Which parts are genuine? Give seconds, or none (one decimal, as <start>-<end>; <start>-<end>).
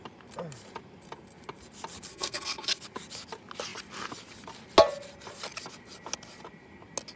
0.0-2.1; 2.8-7.2